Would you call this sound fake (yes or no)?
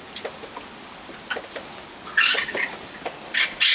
no